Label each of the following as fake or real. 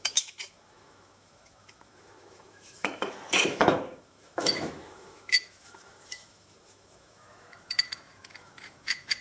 fake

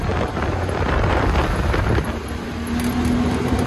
real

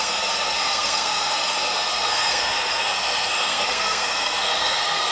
fake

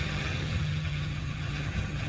fake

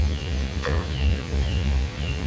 fake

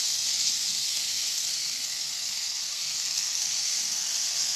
fake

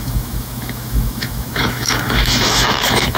fake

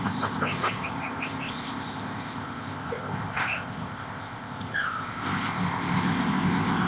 fake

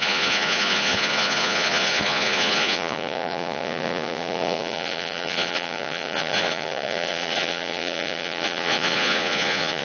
fake